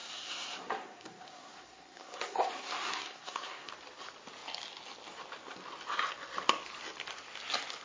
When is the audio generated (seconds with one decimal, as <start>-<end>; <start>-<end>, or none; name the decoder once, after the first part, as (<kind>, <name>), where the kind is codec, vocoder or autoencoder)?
0.0-3.7 (codec, SNAC)